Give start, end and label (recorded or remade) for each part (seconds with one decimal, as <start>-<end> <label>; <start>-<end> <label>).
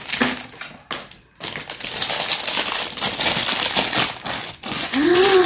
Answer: 0.0-4.4 recorded; 4.4-5.5 remade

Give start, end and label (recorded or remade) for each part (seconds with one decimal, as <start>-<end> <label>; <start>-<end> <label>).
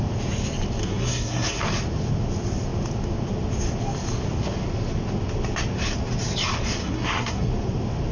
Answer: 0.0-0.8 recorded; 0.8-1.6 remade; 1.6-6.8 recorded; 6.8-7.5 remade; 7.5-8.1 recorded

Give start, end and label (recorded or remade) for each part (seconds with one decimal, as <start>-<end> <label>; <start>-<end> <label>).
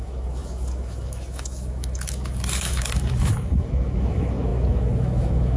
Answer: 0.0-5.6 remade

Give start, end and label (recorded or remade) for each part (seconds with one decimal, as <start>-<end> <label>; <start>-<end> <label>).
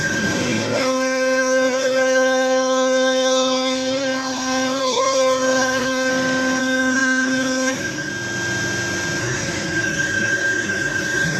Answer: 0.0-6.1 remade; 6.1-6.6 recorded; 6.6-8.1 remade; 8.1-9.2 recorded; 9.2-11.4 remade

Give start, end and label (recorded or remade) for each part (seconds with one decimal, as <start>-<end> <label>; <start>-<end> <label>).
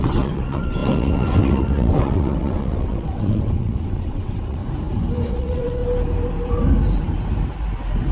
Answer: 0.0-4.6 remade; 4.6-5.3 recorded; 5.3-5.8 remade; 5.8-8.1 recorded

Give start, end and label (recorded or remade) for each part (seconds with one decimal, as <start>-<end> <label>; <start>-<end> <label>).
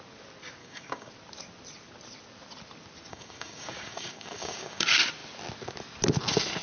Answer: 0.0-0.6 recorded; 0.6-1.1 remade; 1.1-3.1 recorded; 3.1-4.8 remade; 4.8-6.6 recorded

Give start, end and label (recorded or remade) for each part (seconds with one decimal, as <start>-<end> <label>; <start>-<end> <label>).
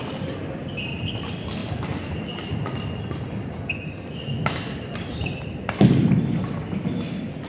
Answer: 0.0-1.6 recorded; 1.6-6.1 remade; 6.1-7.5 recorded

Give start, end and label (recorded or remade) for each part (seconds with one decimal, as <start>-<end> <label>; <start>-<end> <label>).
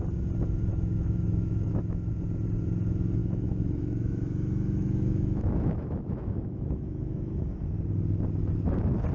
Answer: 0.0-0.7 recorded; 0.7-2.1 remade; 2.1-3.2 recorded; 3.2-7.7 remade; 7.7-9.1 recorded